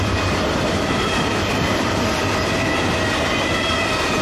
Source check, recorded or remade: recorded